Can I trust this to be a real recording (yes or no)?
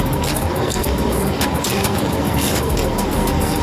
no